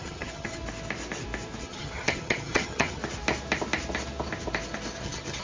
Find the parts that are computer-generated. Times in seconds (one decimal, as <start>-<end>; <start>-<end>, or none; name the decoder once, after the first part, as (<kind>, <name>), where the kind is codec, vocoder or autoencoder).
0.0-0.6 (vocoder, HiFi-GAN); 1.6-3.0; 5.0-5.4

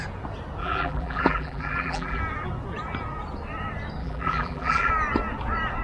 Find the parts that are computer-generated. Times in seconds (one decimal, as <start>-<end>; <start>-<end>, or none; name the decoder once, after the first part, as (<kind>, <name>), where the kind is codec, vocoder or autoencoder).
0.6-2.2 (vocoder, BigVGAN v2); 4.0-4.9

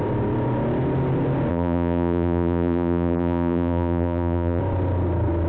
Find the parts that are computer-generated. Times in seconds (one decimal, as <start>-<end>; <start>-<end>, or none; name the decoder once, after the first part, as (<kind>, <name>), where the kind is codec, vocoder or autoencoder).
1.5-4.6 (vocoder, BigVGAN v2)

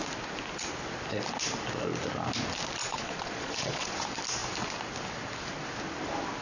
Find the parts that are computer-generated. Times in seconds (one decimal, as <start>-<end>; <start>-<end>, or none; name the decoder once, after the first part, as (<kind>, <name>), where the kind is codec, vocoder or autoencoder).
2.8-3.9 (vocoder, Vocos)

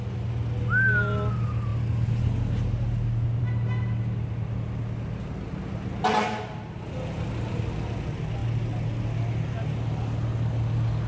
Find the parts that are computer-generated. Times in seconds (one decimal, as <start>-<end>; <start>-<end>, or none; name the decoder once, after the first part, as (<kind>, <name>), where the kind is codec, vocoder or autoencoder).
none

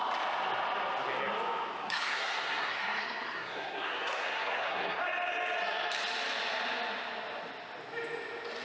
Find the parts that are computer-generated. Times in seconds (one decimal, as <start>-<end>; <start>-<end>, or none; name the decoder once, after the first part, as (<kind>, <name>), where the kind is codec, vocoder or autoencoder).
1.8-5.0 (codec, SNAC)